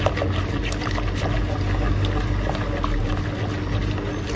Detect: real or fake real